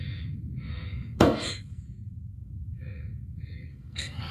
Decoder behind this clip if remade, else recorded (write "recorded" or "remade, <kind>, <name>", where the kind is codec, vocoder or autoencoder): remade, codec, SNAC